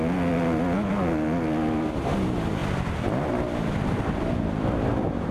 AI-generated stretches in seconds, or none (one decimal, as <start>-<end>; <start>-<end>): none